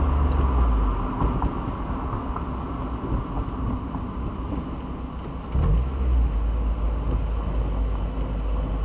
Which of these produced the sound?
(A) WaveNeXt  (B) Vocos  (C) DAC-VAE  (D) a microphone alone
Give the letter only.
D